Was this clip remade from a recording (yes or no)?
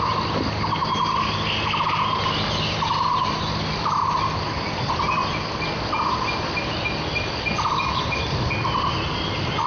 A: no